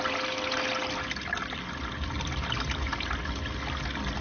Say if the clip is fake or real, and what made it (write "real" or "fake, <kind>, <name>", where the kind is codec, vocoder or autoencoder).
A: real